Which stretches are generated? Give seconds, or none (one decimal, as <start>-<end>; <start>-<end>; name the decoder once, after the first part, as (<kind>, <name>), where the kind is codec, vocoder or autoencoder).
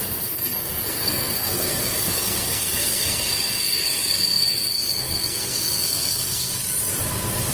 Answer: 0.0-6.5 (codec, SNAC)